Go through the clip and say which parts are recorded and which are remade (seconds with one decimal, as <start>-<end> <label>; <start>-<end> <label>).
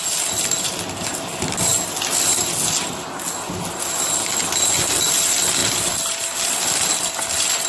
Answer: 0.0-7.7 recorded